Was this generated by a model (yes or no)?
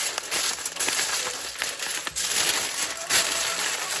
no